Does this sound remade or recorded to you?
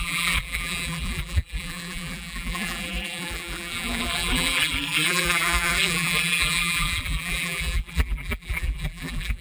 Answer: remade